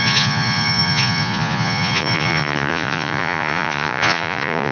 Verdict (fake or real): fake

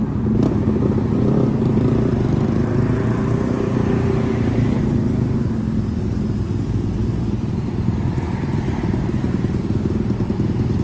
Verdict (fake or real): real